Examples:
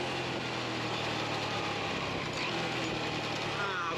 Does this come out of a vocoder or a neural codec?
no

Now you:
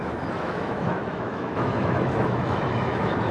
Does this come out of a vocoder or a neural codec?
yes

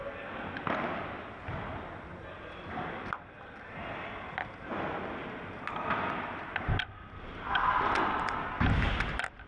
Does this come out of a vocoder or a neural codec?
no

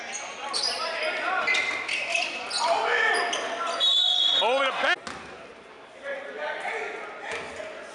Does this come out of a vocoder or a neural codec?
no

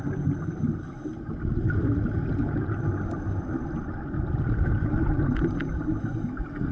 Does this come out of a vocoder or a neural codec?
no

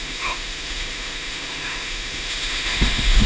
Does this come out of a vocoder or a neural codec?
yes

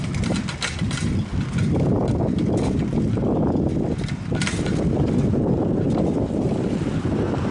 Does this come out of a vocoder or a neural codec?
no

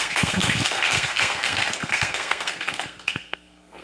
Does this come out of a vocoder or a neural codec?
yes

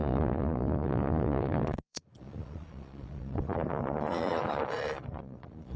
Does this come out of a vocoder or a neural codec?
yes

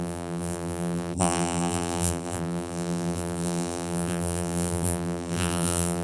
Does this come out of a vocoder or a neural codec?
yes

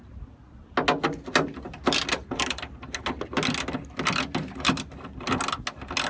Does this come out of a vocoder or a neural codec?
no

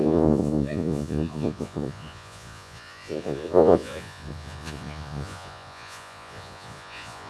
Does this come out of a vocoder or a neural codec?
yes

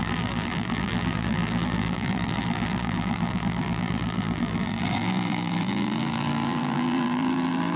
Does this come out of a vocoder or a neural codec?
yes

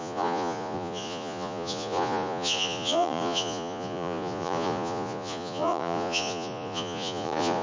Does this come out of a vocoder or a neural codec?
yes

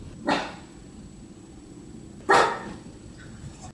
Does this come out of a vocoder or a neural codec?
no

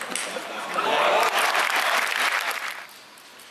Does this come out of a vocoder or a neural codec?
no